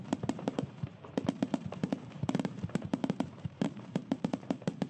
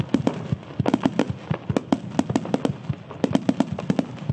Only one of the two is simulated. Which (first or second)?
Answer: first